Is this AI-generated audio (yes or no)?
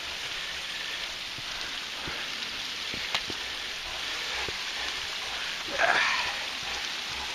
no